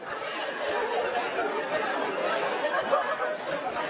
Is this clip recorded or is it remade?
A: recorded